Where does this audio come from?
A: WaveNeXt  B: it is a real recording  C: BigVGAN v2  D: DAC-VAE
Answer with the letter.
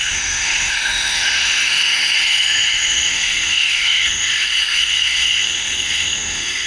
D